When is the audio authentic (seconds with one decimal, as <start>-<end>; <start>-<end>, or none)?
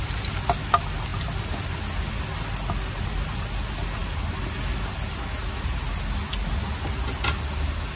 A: 0.0-8.0